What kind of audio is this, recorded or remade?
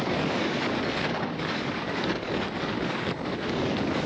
remade